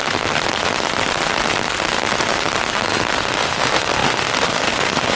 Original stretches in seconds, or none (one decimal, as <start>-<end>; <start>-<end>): 0.0-3.1